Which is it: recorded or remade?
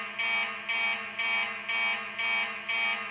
recorded